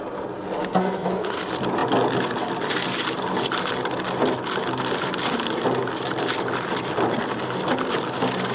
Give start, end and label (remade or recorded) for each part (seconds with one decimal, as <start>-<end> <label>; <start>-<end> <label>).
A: 0.0-0.6 recorded; 0.6-1.4 remade; 1.4-8.5 recorded